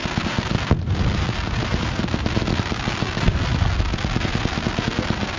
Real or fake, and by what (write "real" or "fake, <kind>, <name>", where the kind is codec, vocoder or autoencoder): real